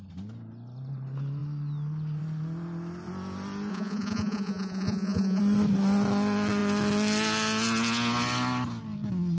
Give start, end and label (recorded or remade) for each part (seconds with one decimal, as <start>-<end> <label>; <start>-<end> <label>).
0.0-3.7 recorded; 3.7-5.4 remade; 5.4-9.4 recorded